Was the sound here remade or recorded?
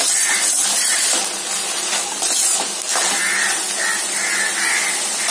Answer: recorded